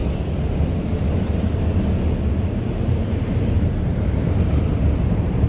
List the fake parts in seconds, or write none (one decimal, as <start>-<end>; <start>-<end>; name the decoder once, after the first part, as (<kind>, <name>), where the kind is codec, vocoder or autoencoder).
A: 2.6-3.9 (vocoder, BigVGAN v2)